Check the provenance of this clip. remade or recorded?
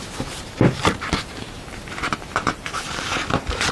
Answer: remade